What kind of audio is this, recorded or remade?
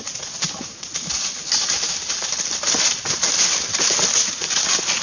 recorded